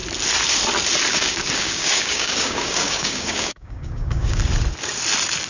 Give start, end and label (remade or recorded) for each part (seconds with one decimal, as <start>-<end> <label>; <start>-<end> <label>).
0.0-1.1 recorded; 1.1-4.4 remade; 4.4-5.5 recorded